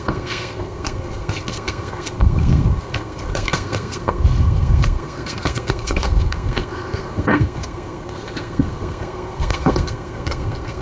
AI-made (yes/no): yes